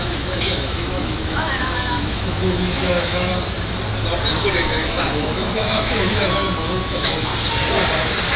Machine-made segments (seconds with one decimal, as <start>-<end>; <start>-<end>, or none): 0.0-3.3; 4.4-7.3